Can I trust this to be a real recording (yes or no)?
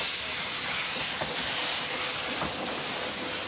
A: yes